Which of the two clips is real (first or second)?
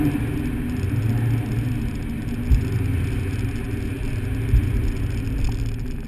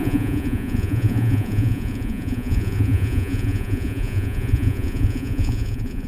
first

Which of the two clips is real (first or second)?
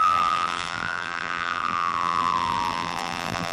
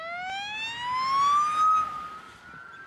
second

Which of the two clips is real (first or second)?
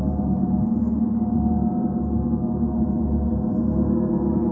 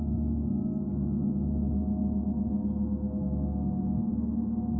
second